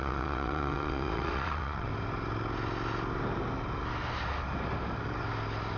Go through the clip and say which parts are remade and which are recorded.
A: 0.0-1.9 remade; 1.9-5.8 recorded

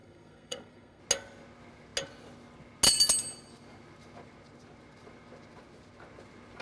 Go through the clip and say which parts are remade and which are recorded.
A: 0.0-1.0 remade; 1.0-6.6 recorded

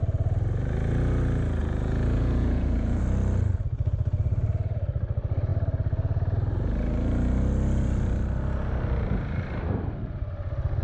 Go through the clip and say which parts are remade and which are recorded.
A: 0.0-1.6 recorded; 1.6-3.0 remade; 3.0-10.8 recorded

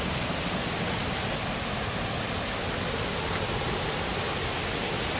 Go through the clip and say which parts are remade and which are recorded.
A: 0.0-5.2 recorded

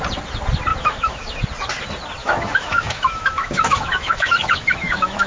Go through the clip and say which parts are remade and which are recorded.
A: 0.0-0.7 recorded; 0.7-1.4 remade; 1.4-2.2 recorded; 2.2-5.3 remade

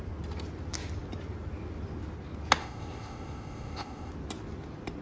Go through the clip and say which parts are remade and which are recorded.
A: 0.0-2.6 recorded; 2.6-4.1 remade; 4.1-5.0 recorded

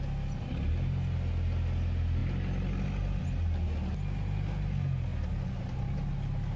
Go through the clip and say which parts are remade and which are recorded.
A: 0.0-6.6 recorded

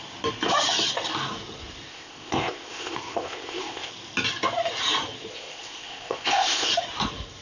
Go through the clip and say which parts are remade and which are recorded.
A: 0.0-1.9 recorded; 1.9-3.9 remade; 3.9-5.3 recorded; 5.3-6.7 remade; 6.7-7.4 recorded